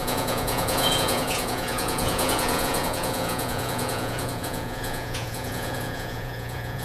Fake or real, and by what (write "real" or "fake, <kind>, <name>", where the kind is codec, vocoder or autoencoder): fake, vocoder, Vocos